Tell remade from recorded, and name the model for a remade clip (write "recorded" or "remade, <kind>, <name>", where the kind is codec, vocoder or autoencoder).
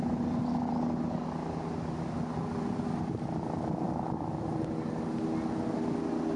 recorded